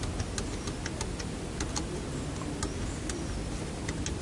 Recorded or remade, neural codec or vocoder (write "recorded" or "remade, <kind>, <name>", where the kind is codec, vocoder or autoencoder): recorded